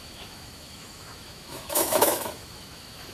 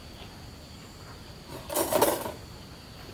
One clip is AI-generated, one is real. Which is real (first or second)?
second